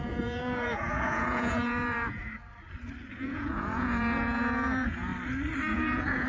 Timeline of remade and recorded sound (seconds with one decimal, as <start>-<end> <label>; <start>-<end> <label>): 0.0-2.2 remade; 2.2-3.2 recorded; 3.2-5.1 remade; 5.1-5.7 recorded; 5.7-6.3 remade